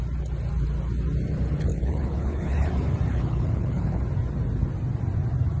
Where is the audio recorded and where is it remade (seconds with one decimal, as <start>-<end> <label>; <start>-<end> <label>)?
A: 0.0-1.7 recorded; 1.7-2.7 remade; 2.7-3.1 recorded; 3.1-4.0 remade; 4.0-5.6 recorded